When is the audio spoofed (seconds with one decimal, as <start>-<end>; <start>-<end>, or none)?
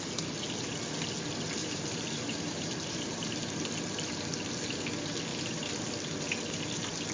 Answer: 1.6-3.4; 5.3-5.9